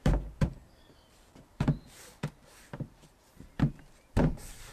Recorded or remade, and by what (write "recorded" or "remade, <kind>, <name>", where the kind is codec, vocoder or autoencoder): remade, vocoder, BigVGAN v2